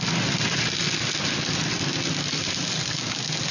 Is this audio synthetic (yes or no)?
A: no